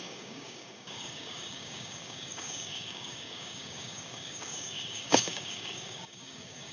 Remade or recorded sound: remade